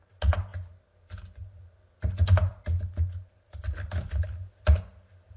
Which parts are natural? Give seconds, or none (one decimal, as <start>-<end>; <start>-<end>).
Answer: 0.0-5.4